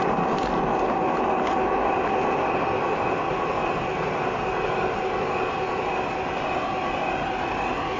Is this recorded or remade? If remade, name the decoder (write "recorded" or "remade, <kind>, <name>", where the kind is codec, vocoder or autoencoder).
recorded